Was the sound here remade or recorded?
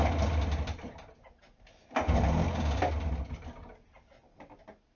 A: recorded